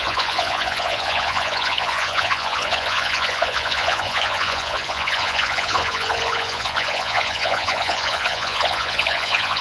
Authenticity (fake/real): fake